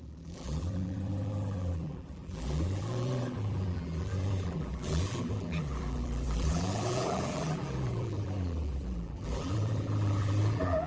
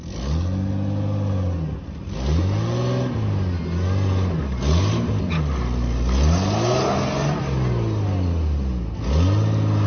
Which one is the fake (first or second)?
first